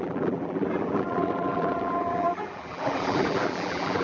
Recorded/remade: remade